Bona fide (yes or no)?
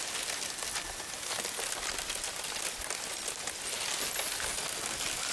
yes